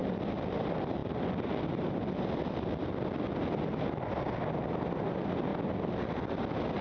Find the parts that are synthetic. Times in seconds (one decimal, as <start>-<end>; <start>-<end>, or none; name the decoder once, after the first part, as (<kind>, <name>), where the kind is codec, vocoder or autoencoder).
none